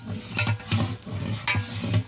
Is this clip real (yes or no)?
yes